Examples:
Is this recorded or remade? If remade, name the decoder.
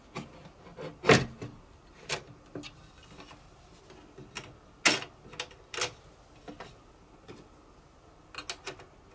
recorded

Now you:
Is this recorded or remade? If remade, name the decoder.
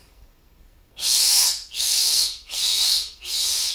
remade, codec, SNAC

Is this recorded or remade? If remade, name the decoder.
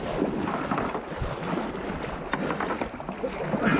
recorded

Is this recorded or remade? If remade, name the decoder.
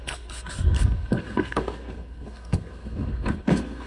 remade, codec, SNAC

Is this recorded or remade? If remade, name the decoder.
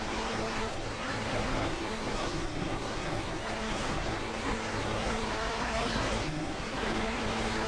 remade, codec, SNAC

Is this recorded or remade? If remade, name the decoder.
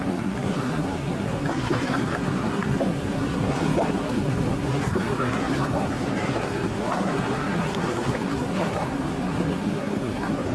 remade, codec, SNAC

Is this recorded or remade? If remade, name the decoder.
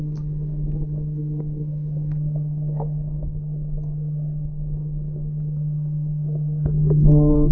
remade, codec, SNAC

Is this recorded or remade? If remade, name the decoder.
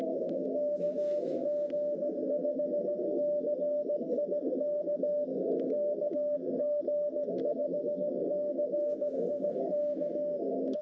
remade, codec, SNAC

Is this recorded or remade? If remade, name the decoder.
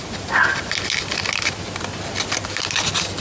recorded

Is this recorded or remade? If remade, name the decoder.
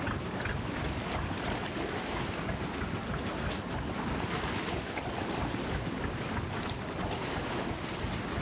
recorded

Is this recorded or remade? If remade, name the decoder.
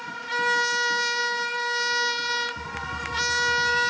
recorded